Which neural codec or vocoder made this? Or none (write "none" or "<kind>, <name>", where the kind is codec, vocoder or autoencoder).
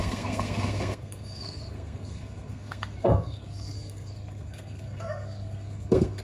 codec, SNAC